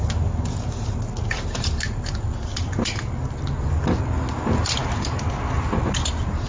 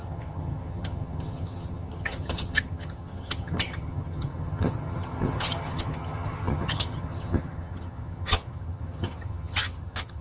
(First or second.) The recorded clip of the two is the first